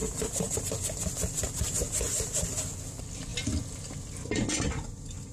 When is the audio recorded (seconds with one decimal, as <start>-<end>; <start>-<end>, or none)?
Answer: 0.6-5.3